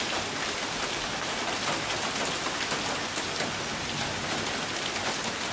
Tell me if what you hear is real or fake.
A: real